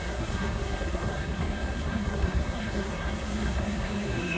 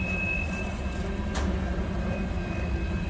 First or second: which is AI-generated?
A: first